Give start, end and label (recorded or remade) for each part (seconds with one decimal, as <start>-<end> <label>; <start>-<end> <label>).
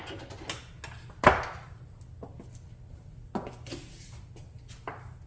0.0-5.3 recorded